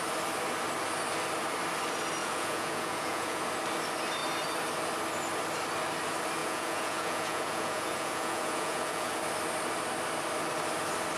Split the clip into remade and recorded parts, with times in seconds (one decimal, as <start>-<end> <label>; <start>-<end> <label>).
0.0-2.2 recorded; 2.2-3.4 remade; 3.4-6.4 recorded; 6.4-9.2 remade; 9.2-11.2 recorded